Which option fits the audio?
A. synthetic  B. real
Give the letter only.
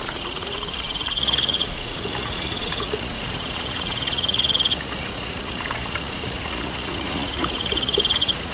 A